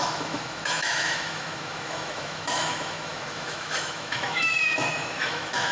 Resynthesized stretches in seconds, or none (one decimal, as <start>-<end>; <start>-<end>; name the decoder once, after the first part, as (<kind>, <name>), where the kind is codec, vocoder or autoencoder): 0.0-5.7 (autoencoder, DAC-VAE)